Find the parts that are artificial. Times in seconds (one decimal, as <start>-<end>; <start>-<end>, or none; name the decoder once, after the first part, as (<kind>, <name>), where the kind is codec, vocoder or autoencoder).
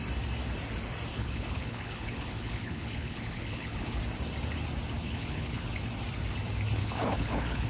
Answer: 1.1-4.0 (codec, HILCodec); 5.0-5.7; 6.8-7.7